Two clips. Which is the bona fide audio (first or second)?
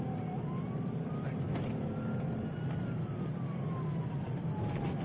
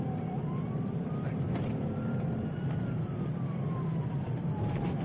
first